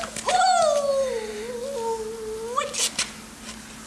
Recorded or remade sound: recorded